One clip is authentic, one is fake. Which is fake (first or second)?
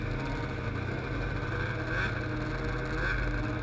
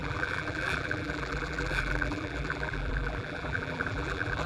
second